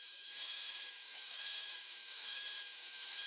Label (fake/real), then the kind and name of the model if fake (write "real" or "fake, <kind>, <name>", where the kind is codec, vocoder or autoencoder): fake, autoencoder, DAC-VAE